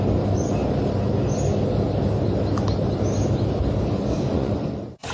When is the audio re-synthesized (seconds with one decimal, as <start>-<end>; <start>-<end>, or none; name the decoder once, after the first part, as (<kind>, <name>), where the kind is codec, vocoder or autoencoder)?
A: 4.3-5.1 (vocoder, Vocos)